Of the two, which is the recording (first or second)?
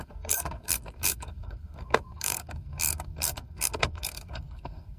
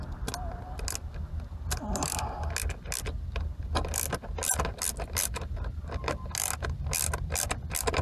second